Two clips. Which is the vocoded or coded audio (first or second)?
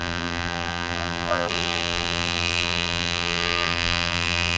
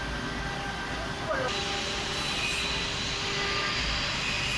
first